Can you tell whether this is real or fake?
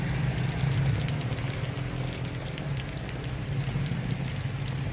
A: real